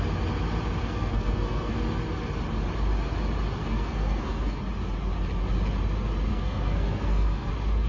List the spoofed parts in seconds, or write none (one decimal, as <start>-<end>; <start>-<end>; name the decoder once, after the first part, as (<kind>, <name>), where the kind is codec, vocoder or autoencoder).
0.8-1.7 (codec, SNAC); 3.6-4.6; 6.3-7.5